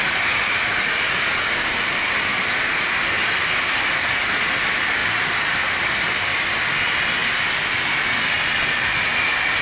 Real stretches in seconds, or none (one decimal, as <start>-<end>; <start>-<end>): 0.0-2.3; 3.7-5.0; 6.4-7.2; 7.8-9.6